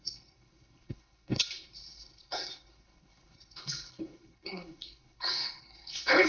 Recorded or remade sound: remade